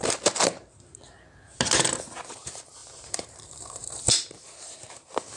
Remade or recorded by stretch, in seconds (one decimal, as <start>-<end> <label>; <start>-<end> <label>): 0.0-2.8 recorded; 2.8-4.0 remade; 4.0-5.4 recorded

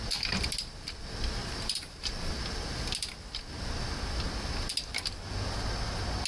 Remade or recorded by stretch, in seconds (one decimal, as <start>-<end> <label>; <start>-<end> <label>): 0.0-1.4 recorded; 1.4-2.3 remade; 2.3-6.3 recorded

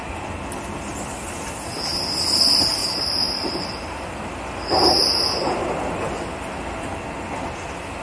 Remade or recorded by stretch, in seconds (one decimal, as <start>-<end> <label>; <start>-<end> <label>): 0.0-2.8 recorded; 2.8-4.3 remade; 4.3-8.0 recorded

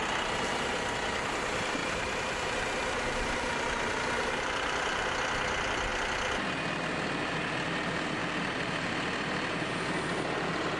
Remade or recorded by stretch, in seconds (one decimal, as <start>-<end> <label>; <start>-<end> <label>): 0.0-1.8 recorded; 1.8-5.1 remade; 5.1-8.2 recorded; 8.2-8.9 remade; 8.9-10.8 recorded